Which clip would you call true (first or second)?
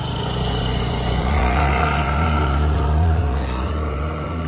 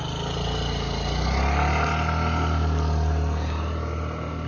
second